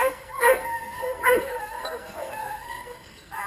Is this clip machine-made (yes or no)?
yes